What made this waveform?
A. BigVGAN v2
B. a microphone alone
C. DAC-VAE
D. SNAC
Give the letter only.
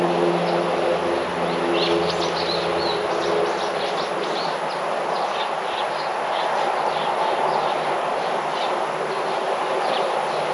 B